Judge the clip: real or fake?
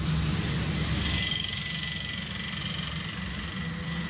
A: real